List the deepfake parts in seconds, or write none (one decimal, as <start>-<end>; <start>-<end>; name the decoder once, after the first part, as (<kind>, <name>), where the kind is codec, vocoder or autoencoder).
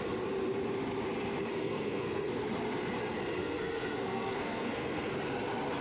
1.5-2.3 (codec, SNAC); 3.4-5.1